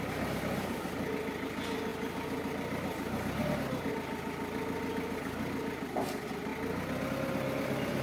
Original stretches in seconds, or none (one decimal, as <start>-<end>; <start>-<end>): 0.0-8.0